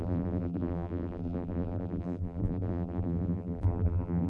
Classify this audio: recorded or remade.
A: remade